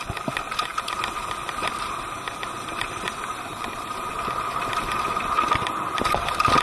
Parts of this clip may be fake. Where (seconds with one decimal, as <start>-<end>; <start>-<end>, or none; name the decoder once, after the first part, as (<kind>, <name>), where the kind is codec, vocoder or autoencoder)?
3.5-4.1 (vocoder, BigVGAN v2)